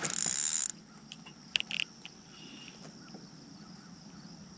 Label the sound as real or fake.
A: real